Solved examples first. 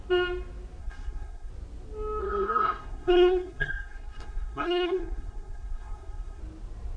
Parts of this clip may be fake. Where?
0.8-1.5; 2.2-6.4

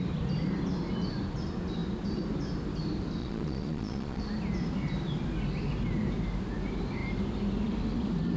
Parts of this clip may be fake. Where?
3.2-4.2

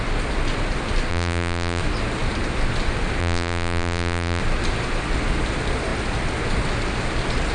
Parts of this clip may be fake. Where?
1.1-1.8; 3.2-4.4

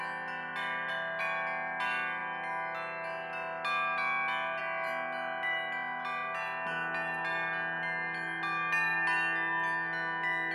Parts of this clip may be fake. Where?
none